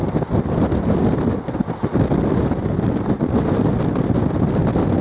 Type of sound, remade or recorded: recorded